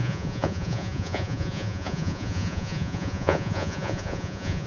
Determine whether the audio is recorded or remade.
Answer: remade